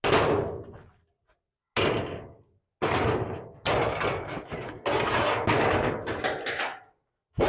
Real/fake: real